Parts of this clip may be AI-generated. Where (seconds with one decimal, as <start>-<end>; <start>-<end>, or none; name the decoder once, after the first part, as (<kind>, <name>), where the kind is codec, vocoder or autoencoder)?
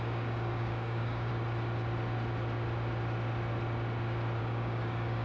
0.0-1.3 (codec, DAC); 4.4-5.2